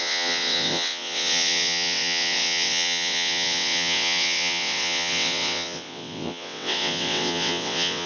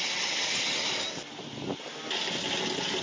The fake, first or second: first